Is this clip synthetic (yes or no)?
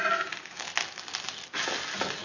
no